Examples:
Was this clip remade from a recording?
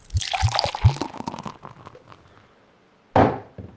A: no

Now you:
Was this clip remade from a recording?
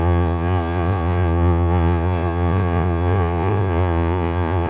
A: yes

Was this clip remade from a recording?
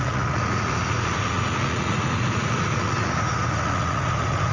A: yes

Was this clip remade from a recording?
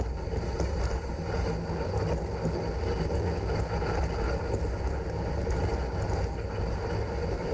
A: no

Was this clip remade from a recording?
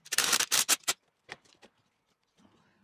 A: yes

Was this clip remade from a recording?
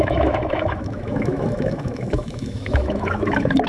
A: yes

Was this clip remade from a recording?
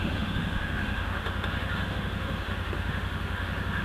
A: yes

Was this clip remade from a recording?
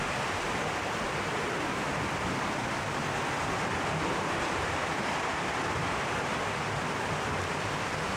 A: yes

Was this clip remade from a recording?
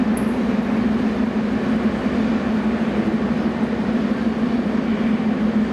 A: no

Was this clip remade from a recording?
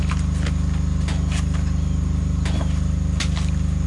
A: no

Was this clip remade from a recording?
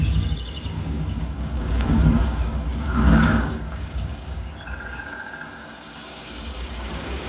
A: yes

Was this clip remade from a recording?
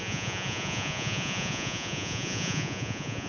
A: yes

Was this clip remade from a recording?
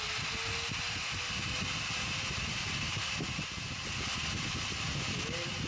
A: no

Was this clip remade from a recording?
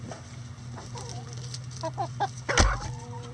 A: no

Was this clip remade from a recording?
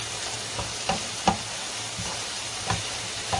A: no